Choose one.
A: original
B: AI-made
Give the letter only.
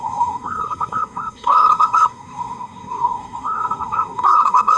B